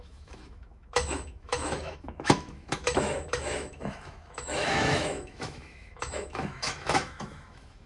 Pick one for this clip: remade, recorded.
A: remade